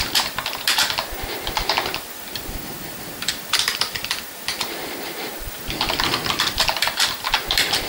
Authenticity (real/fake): fake